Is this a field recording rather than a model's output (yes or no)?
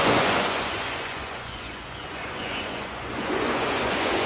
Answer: no